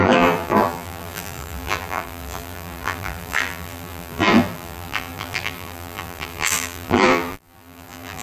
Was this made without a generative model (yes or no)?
no